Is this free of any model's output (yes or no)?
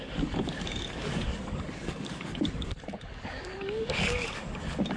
no